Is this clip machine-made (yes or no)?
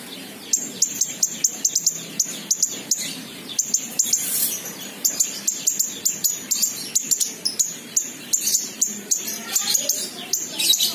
yes